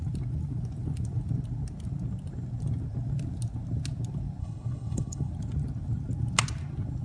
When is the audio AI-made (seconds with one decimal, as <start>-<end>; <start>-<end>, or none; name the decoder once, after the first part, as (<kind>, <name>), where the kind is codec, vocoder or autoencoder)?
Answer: 4.4-5.3 (codec, HILCodec)